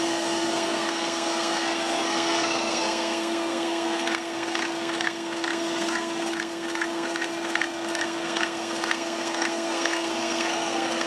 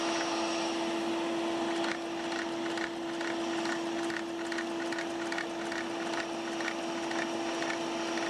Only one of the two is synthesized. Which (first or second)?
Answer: first